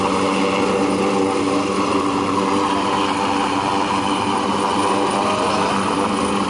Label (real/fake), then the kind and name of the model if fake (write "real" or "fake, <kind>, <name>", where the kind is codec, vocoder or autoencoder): real